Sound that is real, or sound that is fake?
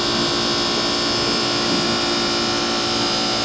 real